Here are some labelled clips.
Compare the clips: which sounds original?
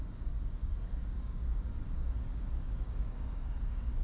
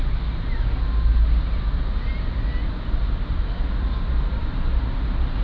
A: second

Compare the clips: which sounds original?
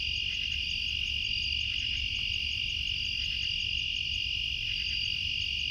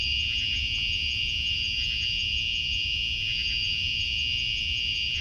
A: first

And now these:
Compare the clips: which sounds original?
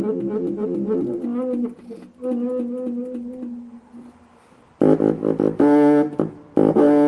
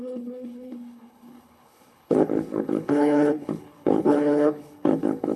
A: first